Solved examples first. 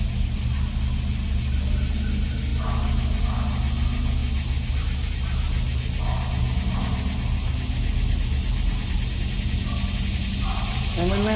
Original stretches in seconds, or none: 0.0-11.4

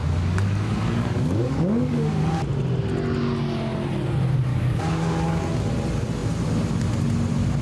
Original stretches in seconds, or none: 2.2-4.5; 5.7-7.6

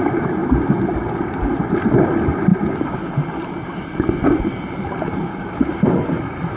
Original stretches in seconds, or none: 0.0-5.3; 5.9-6.6

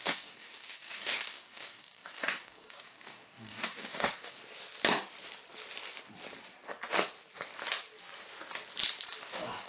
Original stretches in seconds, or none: 4.4-9.2

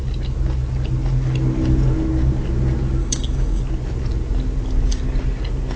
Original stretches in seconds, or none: 0.0-3.0; 3.6-5.8